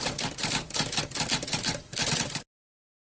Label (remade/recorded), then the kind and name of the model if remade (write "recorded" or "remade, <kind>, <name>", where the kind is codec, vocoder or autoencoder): recorded